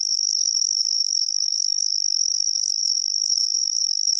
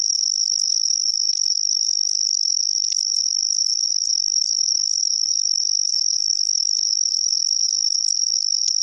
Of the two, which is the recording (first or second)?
second